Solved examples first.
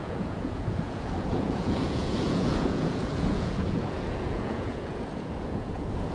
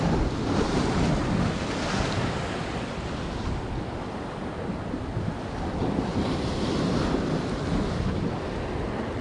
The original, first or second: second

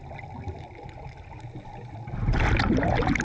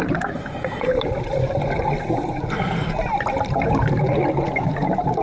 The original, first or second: first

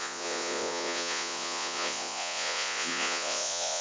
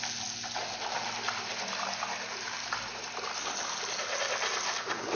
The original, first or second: second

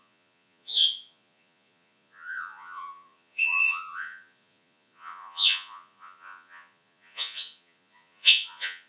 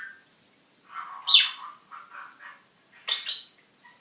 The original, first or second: second